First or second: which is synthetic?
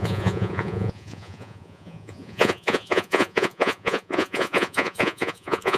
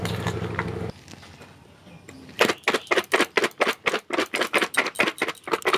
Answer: first